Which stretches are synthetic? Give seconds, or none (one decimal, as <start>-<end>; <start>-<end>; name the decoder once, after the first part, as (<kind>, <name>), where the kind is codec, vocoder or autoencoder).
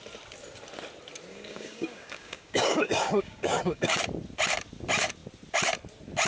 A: 1.3-4.0 (codec, DAC)